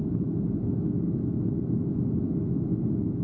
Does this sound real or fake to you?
real